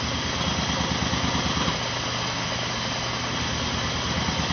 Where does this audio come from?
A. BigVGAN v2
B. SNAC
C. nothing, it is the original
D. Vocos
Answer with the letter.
C